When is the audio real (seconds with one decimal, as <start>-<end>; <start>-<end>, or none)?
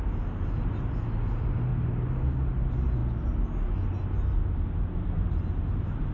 1.7-2.6; 3.0-5.2